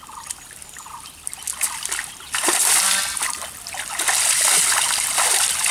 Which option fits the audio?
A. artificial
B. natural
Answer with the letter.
B